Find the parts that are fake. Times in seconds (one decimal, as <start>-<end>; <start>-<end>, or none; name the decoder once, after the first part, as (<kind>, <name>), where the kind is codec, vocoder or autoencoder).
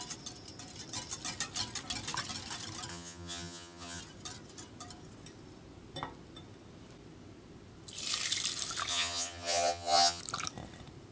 2.9-4.0 (vocoder, HiFi-GAN); 8.9-10.2